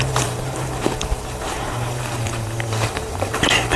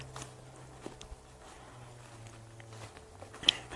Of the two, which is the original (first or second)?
second